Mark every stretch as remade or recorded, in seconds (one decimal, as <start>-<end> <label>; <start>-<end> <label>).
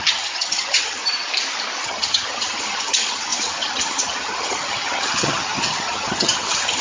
0.0-1.0 remade; 1.0-1.8 recorded; 1.8-6.8 remade